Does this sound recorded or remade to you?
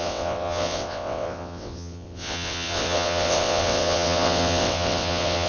remade